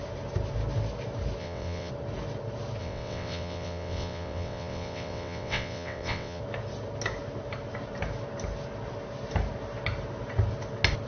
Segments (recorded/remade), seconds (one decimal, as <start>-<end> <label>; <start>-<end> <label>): 0.0-1.4 recorded; 1.4-1.9 remade; 1.9-2.8 recorded; 2.8-6.4 remade; 6.4-11.1 recorded